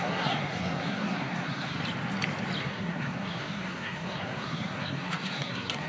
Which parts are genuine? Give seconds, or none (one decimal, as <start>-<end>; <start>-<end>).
1.8-2.6